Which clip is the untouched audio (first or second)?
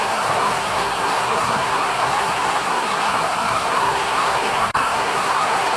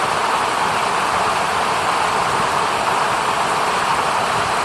second